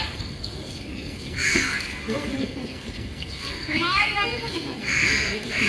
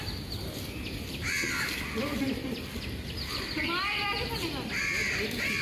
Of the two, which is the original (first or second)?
second